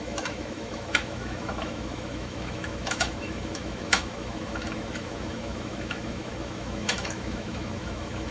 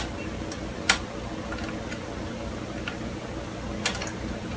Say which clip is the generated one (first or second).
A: first